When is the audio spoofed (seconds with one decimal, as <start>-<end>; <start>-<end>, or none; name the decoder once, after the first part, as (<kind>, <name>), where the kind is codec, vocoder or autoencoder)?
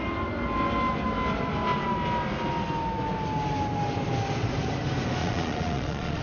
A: 5.2-6.2 (vocoder, Vocos)